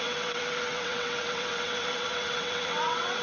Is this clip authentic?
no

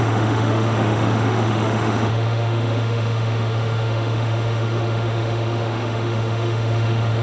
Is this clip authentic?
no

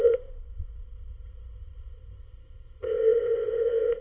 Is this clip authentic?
no